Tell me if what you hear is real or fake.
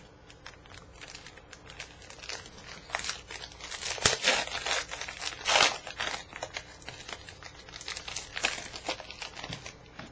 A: real